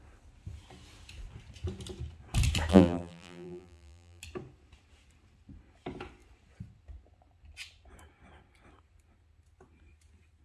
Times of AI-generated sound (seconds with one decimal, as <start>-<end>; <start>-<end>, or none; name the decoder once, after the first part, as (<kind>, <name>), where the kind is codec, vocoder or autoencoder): 2.7-4.2 (vocoder, BigVGAN v2)